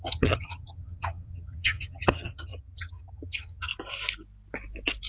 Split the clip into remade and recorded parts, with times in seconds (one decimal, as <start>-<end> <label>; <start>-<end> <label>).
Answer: 0.0-3.7 remade; 3.7-5.1 recorded